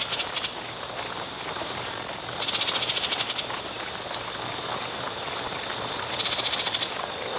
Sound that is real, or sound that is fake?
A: real